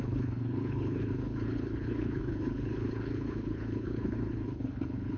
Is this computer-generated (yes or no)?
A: yes